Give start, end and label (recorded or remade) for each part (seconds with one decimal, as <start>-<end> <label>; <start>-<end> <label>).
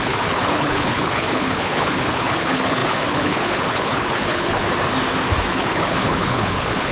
0.0-4.7 remade; 4.7-5.5 recorded; 5.5-6.9 remade